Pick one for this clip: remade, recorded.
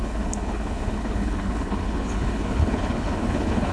remade